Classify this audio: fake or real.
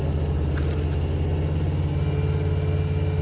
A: real